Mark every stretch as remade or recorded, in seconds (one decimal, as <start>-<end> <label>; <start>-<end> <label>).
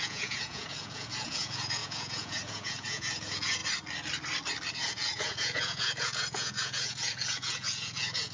0.0-3.6 remade; 3.6-4.7 recorded; 4.7-8.3 remade